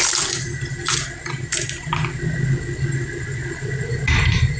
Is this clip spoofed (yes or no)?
no